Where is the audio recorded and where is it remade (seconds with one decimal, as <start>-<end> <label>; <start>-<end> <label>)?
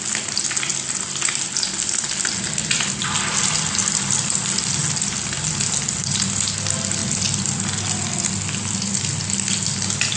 0.0-7.0 recorded; 7.0-7.6 remade; 7.6-10.2 recorded